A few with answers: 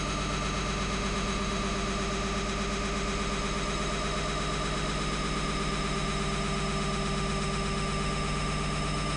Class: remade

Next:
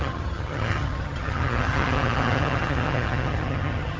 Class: remade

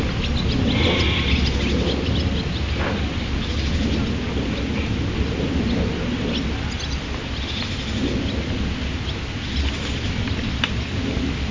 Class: recorded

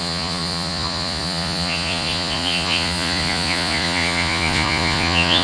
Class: remade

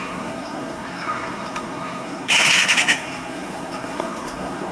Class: remade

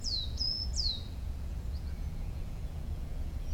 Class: remade